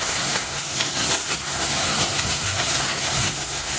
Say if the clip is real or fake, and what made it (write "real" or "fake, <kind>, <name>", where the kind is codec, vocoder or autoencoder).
fake, codec, SNAC